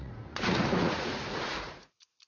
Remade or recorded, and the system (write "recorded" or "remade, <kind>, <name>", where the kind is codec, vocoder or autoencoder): remade, vocoder, Vocos